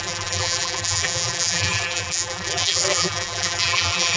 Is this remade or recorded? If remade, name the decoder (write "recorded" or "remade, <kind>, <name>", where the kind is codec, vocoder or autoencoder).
remade, vocoder, BigVGAN v2